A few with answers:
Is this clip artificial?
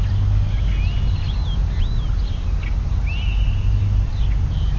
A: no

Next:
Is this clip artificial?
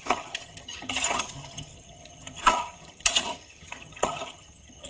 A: yes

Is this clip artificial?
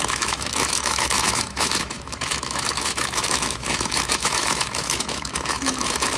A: yes